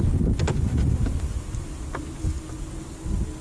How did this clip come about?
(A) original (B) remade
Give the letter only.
A